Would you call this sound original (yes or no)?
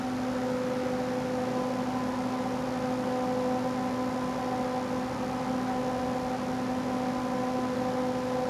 yes